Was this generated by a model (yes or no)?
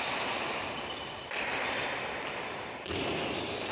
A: no